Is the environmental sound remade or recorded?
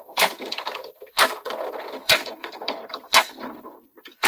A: remade